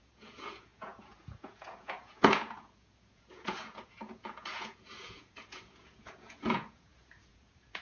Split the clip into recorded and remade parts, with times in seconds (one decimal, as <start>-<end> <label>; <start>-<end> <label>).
0.0-7.8 remade